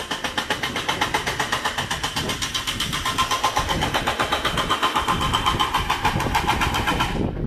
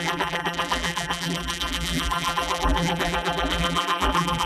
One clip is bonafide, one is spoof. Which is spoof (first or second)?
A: second